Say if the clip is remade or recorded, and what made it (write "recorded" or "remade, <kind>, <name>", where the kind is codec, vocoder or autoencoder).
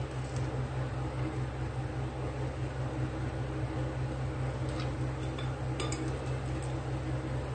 recorded